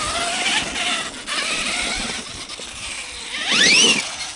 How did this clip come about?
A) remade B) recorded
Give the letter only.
B